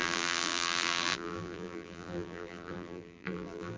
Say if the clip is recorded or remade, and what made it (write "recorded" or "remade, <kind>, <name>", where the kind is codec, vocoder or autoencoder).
remade, vocoder, BigVGAN v2